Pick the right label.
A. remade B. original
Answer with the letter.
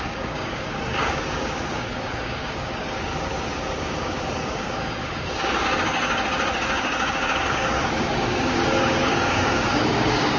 A